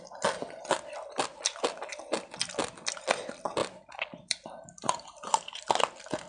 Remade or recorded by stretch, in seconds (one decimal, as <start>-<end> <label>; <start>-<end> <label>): 0.0-3.6 recorded; 3.6-5.7 remade; 5.7-6.3 recorded